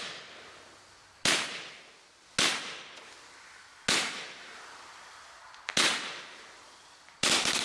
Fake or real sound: real